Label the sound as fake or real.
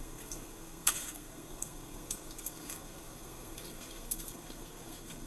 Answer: fake